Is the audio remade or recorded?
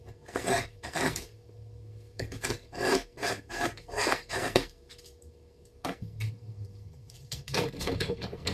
remade